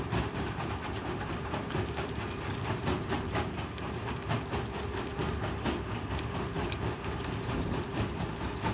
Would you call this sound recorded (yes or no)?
no